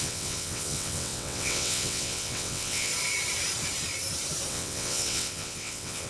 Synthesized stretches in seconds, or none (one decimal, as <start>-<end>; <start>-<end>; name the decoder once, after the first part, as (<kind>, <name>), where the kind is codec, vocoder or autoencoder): 0.0-2.9 (vocoder, WaveNeXt); 4.5-6.1